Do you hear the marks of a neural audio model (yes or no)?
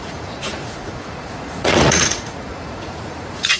yes